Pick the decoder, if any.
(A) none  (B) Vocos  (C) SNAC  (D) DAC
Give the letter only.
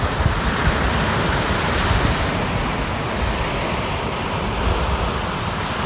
A